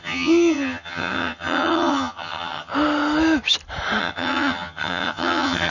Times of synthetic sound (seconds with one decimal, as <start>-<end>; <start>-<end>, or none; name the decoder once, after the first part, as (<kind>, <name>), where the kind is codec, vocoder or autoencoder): 0.0-2.7 (vocoder, HiFi-GAN); 4.0-5.7